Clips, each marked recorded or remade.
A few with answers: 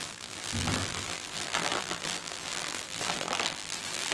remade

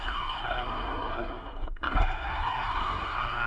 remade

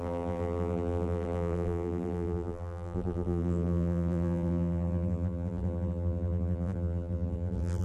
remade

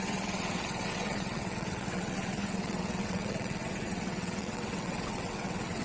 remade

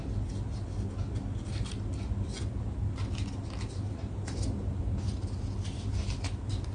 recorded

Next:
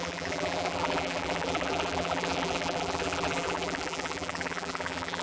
remade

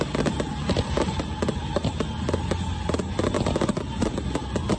recorded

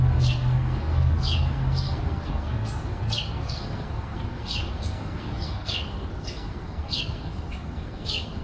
remade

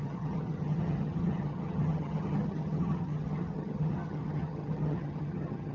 remade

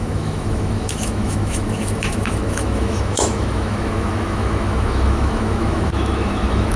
remade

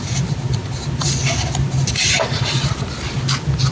recorded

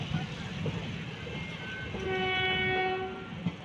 recorded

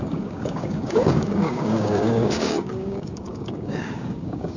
remade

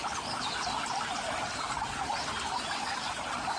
recorded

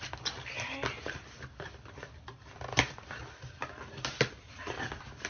recorded